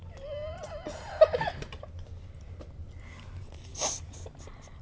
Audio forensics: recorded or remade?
recorded